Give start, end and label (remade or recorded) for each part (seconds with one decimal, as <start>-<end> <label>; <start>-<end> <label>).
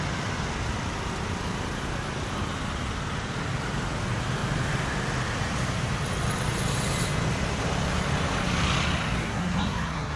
0.0-9.2 recorded; 9.2-10.2 remade